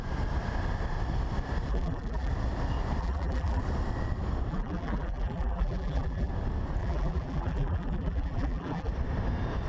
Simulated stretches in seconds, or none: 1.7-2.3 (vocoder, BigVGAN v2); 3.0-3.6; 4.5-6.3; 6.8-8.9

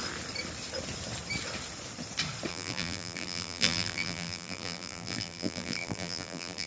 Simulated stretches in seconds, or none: 2.5-6.7 (vocoder, BigVGAN v2)